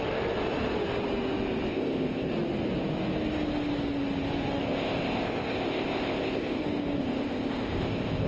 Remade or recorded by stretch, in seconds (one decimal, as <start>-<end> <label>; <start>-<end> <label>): 0.0-1.7 recorded; 1.7-2.3 remade; 2.3-4.6 recorded; 4.6-6.6 remade; 6.6-7.0 recorded; 7.0-8.3 remade